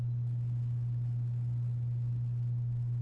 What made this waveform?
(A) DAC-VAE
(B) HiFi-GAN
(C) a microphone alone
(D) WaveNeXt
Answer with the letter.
C